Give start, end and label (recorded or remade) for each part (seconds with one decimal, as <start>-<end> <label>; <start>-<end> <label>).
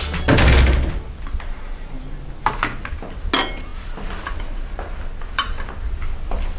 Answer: 0.0-3.7 recorded; 3.7-5.7 remade; 5.7-6.6 recorded